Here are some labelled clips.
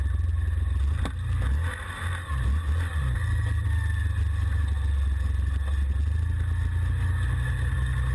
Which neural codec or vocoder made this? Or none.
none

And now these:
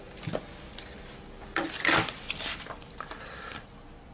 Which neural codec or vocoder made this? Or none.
none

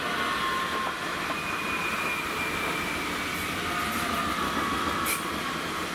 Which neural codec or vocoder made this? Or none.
none